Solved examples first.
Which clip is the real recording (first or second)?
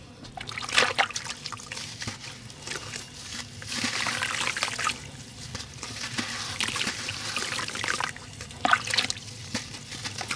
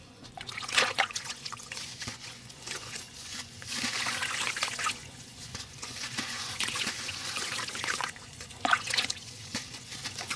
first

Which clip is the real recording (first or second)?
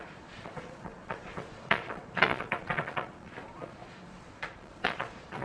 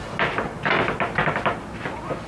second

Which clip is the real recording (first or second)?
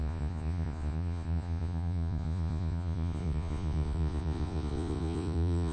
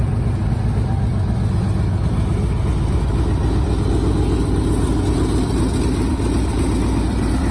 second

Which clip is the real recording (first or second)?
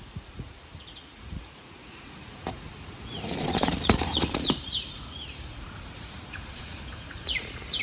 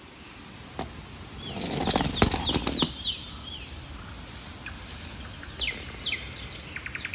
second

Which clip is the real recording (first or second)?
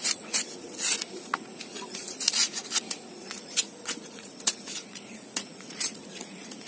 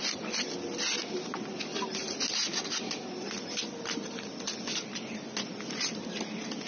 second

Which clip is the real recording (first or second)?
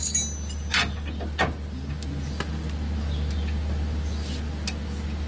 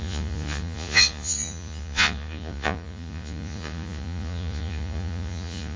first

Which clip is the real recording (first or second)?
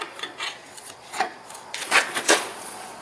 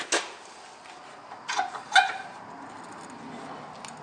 second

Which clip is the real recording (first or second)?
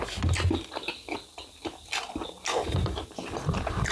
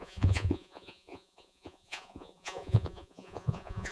first